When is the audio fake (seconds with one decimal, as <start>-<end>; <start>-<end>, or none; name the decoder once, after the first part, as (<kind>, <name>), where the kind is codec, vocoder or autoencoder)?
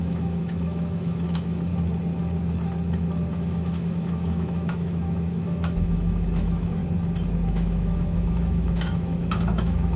0.0-1.7 (autoencoder, DAC-VAE); 3.3-6.8; 7.5-10.0